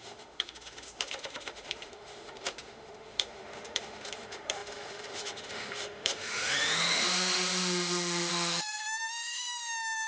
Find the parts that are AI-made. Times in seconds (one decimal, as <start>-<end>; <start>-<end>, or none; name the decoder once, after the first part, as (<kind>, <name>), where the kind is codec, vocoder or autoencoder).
0.0-10.1 (autoencoder, DAC-VAE)